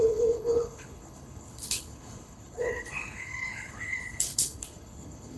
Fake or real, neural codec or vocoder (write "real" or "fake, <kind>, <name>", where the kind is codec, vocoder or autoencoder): fake, codec, HILCodec